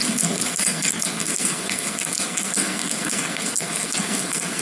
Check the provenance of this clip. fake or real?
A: fake